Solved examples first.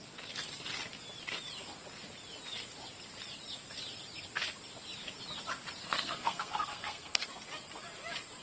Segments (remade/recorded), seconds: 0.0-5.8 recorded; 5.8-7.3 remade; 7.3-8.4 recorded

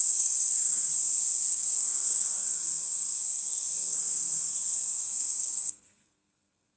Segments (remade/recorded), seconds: 0.0-0.9 remade; 0.9-1.4 recorded; 1.4-6.8 remade

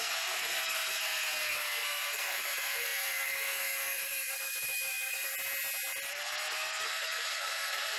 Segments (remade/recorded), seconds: 0.0-5.3 remade; 5.3-6.1 recorded; 6.1-8.0 remade